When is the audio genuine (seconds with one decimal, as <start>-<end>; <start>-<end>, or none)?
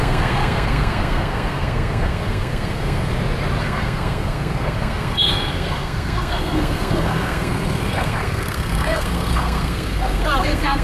3.1-3.6